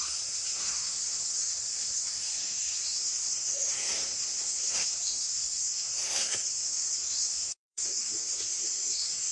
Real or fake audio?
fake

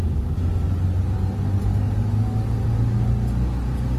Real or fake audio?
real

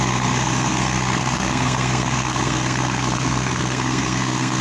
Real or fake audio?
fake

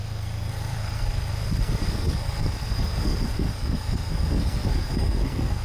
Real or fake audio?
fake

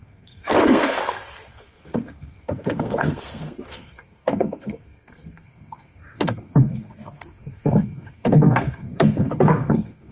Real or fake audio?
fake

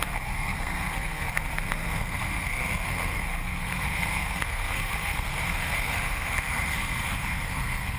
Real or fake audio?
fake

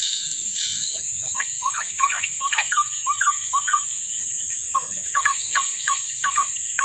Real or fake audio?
fake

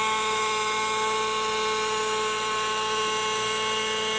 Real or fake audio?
real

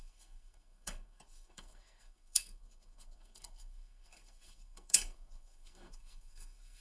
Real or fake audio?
fake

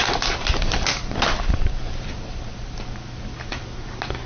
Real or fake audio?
real